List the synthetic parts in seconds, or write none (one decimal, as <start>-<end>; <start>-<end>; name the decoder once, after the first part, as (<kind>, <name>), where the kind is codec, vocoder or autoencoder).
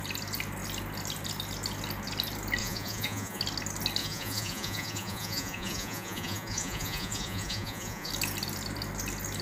2.6-3.4 (vocoder, Vocos); 4.0-8.1